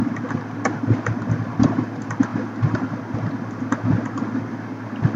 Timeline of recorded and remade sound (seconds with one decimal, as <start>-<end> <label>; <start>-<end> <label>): 0.0-5.2 recorded